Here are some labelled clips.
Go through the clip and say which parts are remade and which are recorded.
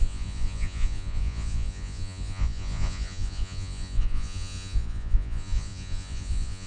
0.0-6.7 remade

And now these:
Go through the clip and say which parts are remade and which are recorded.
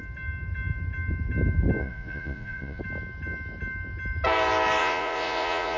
0.0-1.8 recorded; 1.8-2.8 remade; 2.8-4.8 recorded; 4.8-5.8 remade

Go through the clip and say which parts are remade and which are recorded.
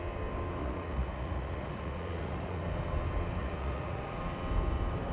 0.0-0.6 recorded; 0.6-2.6 remade; 2.6-3.4 recorded; 3.4-4.2 remade; 4.2-5.1 recorded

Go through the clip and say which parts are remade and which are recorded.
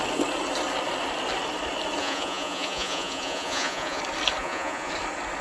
0.0-2.0 recorded; 2.0-4.0 remade; 4.0-4.4 recorded; 4.4-4.9 remade; 4.9-5.4 recorded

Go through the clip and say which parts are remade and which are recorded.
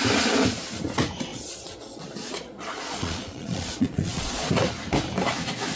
0.0-1.3 recorded; 1.3-4.5 remade; 4.5-5.8 recorded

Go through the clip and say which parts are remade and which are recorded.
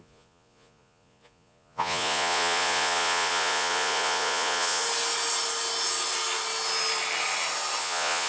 0.0-4.8 remade; 4.8-7.8 recorded; 7.8-8.3 remade